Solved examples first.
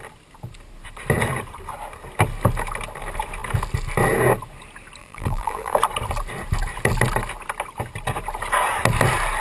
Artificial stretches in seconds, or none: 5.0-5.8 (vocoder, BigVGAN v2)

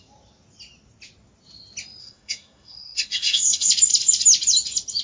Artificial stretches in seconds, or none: 2.0-3.7 (codec, SNAC)

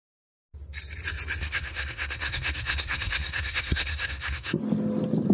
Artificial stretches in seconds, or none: 1.4-4.6 (codec, SNAC)